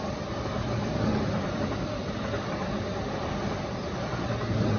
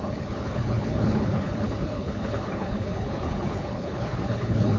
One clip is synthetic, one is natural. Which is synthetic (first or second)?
second